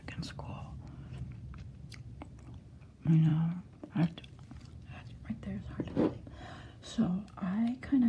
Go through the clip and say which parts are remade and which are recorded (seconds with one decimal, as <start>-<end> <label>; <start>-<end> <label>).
0.0-8.1 recorded